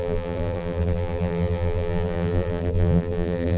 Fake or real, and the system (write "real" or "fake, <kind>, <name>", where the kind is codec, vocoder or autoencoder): fake, vocoder, BigVGAN v2